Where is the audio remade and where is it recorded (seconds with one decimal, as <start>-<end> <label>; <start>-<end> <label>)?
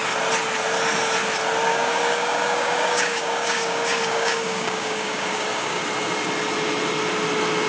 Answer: 0.0-1.7 recorded; 1.7-5.8 remade; 5.8-7.7 recorded